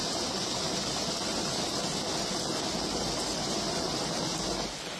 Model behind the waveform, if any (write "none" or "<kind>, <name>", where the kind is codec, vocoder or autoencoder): none